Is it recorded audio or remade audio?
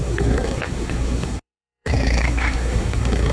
remade